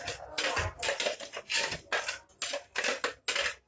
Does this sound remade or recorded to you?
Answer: recorded